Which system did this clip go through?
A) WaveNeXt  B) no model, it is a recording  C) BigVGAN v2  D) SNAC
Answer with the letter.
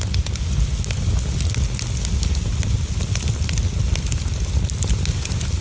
B